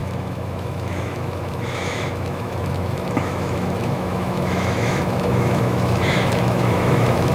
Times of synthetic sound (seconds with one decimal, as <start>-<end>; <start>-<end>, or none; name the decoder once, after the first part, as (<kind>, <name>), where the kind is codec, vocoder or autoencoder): 0.0-7.3 (autoencoder, DAC-VAE)